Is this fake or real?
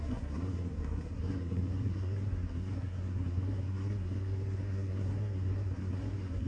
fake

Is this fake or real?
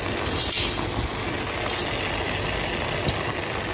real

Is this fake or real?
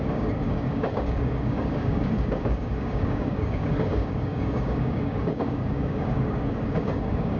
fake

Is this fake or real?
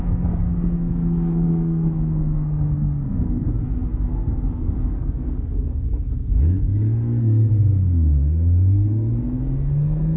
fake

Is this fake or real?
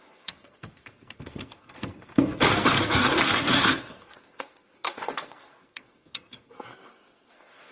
fake